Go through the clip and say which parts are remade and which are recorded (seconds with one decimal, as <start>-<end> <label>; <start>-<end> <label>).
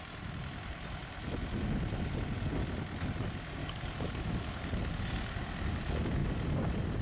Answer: 0.0-3.6 recorded; 3.6-4.9 remade; 4.9-7.0 recorded